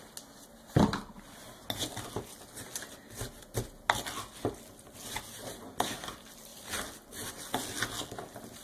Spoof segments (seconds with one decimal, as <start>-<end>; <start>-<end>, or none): none